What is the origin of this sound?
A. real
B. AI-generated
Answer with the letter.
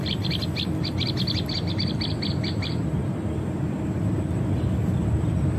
A